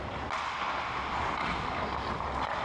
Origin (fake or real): real